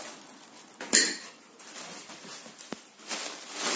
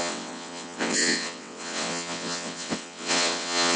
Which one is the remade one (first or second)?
second